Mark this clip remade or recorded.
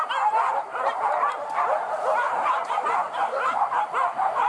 recorded